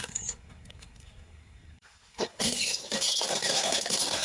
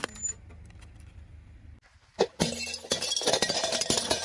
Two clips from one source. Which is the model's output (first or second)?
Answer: first